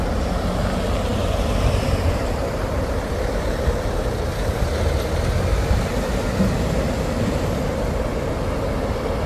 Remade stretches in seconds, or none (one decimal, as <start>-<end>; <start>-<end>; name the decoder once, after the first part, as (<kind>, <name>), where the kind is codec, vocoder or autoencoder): none